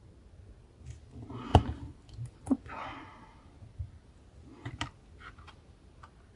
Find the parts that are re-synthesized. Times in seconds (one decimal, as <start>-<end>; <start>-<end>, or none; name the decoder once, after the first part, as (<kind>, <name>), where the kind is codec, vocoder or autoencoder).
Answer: none